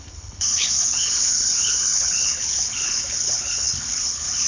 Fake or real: fake